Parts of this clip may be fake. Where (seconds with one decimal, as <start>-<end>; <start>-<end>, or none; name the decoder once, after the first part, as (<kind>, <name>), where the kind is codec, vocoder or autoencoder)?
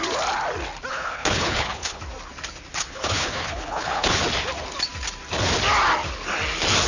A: 0.9-2.0 (codec, HILCodec); 2.7-4.2